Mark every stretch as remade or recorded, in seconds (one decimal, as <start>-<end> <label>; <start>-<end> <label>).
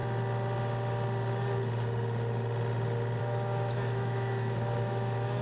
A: 0.0-3.2 recorded; 3.2-5.4 remade